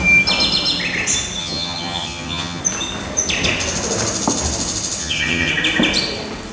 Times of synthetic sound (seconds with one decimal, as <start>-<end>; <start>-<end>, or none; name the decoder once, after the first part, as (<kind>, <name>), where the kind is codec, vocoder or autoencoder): 1.4-2.6 (vocoder, HiFi-GAN); 5.0-5.5